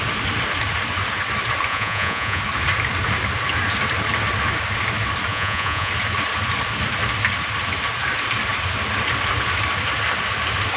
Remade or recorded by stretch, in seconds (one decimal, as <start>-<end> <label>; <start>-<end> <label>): 0.0-1.7 recorded; 1.7-2.4 remade; 2.4-5.3 recorded; 5.3-5.9 remade; 5.9-10.8 recorded